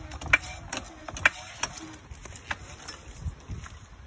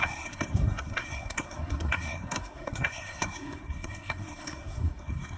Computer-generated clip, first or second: second